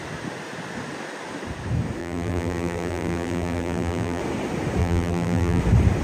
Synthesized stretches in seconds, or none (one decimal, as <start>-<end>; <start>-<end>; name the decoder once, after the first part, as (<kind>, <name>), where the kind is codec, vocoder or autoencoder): 2.0-4.2 (vocoder, BigVGAN v2); 4.8-5.6